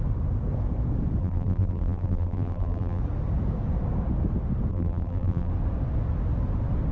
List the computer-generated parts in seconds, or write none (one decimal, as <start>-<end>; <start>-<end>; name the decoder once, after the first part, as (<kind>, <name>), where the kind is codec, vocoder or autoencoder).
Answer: 1.2-3.0 (vocoder, BigVGAN v2); 4.7-5.5